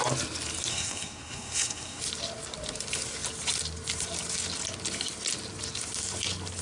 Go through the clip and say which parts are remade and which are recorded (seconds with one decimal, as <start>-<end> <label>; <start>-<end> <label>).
0.0-0.7 recorded; 0.7-2.0 remade; 2.0-6.6 recorded